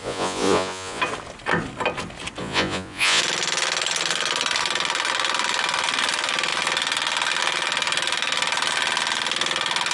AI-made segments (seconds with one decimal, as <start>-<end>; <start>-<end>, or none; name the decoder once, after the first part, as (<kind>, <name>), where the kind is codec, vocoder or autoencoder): 0.0-1.0 (vocoder, Vocos); 2.4-3.2